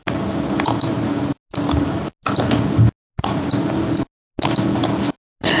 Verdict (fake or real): real